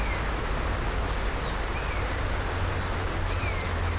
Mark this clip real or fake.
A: real